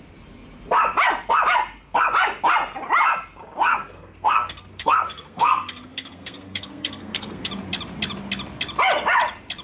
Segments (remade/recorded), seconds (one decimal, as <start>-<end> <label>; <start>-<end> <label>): 0.0-3.7 recorded; 3.7-7.5 remade; 7.5-9.6 recorded